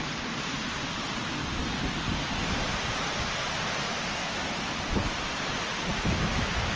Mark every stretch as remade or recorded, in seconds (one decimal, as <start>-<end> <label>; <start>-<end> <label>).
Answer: 0.0-4.2 recorded; 4.2-4.7 remade; 4.7-5.9 recorded; 5.9-6.8 remade